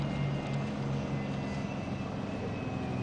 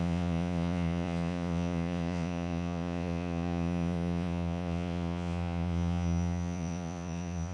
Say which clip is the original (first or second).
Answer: first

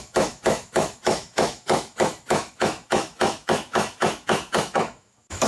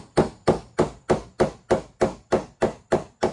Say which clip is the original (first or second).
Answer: second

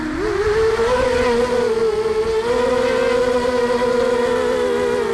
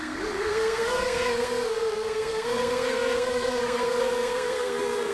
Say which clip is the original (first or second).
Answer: first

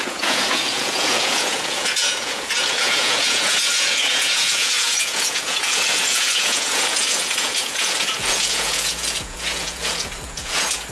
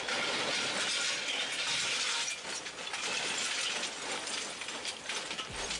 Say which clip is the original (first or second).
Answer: second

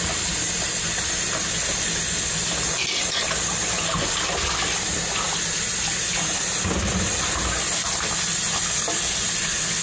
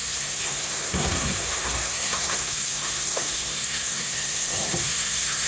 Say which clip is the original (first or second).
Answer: first